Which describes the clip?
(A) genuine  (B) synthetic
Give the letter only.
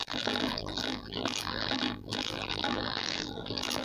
B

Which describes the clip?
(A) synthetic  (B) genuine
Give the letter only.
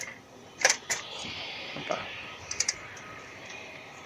A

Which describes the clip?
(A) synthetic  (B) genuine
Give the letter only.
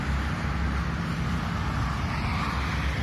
B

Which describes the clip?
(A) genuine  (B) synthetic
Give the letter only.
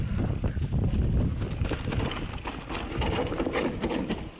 A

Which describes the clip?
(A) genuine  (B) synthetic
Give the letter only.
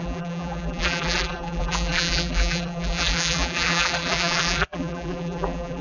B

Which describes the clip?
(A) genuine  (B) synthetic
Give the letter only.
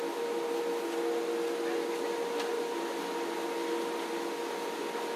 A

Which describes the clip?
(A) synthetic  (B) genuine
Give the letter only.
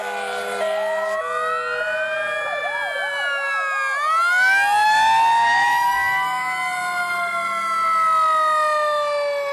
B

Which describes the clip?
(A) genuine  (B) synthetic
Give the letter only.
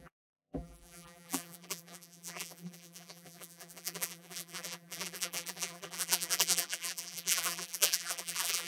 B